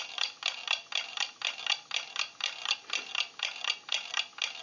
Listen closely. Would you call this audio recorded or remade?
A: recorded